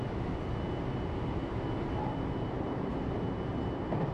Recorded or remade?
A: recorded